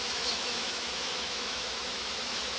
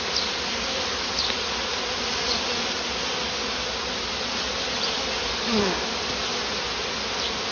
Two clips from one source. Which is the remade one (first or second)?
first